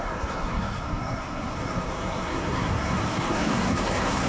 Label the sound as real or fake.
fake